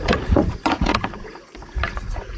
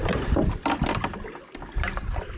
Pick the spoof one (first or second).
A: first